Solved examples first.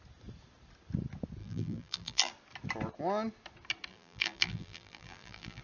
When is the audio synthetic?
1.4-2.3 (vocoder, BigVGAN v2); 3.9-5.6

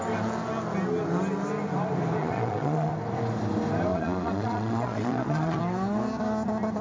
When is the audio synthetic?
2.2-2.9 (vocoder, Vocos); 3.9-5.6

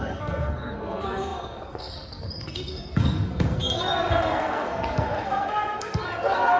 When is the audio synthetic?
0.0-6.6 (codec, SNAC)

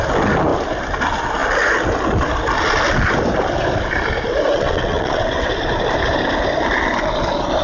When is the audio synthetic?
4.5-5.5 (vocoder, WaveNeXt)

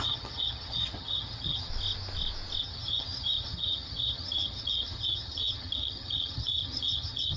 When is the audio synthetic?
0.0-1.7 (vocoder, HiFi-GAN); 2.6-7.4

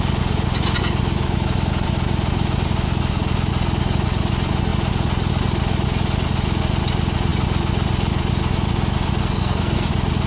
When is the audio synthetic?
9.2-9.9 (codec, SNAC)